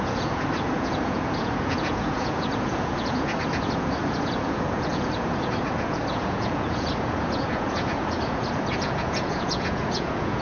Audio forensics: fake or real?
fake